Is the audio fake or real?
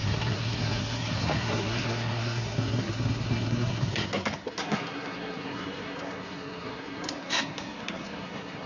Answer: fake